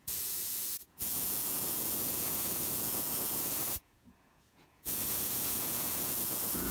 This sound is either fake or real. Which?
fake